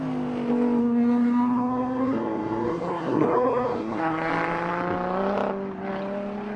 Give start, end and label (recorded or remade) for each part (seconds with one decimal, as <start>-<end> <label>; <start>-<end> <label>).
0.0-0.8 recorded; 0.8-4.3 remade; 4.3-6.6 recorded

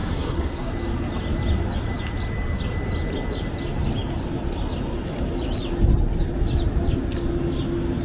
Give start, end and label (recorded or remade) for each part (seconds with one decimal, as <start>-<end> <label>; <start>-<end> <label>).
0.0-0.7 remade; 0.7-8.0 recorded

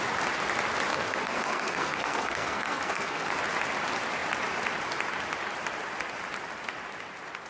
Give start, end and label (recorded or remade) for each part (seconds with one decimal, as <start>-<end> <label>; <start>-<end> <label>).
0.0-0.9 recorded; 0.9-3.3 remade; 3.3-7.5 recorded

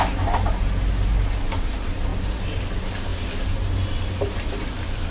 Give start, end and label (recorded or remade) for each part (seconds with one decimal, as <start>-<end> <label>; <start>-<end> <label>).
0.0-5.1 recorded